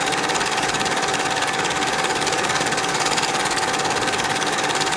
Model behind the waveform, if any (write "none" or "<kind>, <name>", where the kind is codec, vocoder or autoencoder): codec, DAC